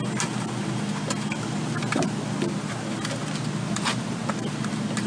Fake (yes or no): no